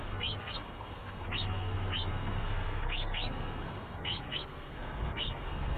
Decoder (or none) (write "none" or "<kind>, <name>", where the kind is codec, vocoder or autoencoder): codec, SNAC